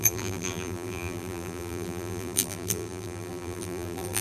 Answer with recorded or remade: remade